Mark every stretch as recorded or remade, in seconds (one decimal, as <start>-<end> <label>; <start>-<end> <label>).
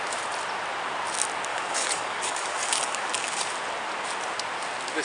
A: 0.0-1.5 recorded; 1.5-3.4 remade; 3.4-5.0 recorded